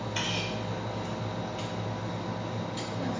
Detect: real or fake real